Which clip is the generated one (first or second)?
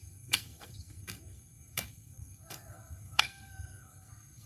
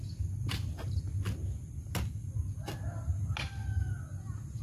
first